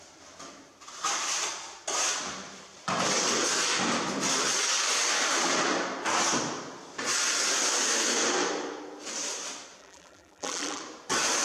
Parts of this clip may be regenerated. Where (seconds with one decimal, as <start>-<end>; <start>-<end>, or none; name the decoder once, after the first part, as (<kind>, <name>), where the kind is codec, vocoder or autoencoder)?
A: 9.8-10.8 (vocoder, BigVGAN v2)